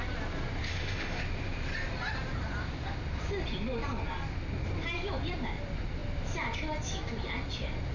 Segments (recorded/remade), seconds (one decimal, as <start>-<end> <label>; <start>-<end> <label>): 0.0-0.7 recorded; 0.7-1.2 remade; 1.2-7.9 recorded